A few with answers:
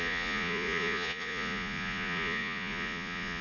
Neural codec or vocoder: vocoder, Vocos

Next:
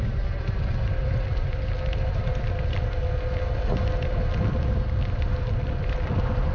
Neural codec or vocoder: none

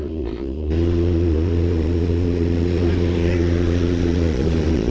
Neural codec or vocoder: vocoder, Vocos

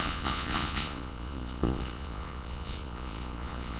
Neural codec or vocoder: vocoder, Vocos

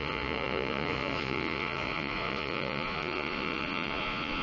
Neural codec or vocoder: vocoder, Vocos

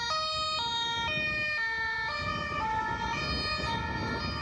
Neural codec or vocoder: none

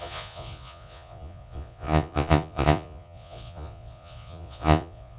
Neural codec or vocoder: vocoder, Vocos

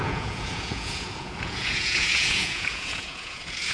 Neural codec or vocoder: vocoder, Vocos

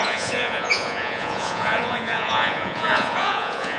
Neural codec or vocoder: vocoder, Vocos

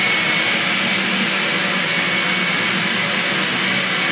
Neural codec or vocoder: none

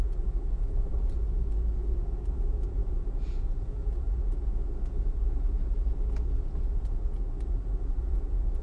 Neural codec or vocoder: vocoder, Vocos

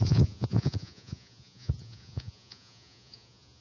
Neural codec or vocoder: vocoder, Vocos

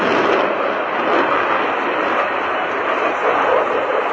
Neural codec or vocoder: none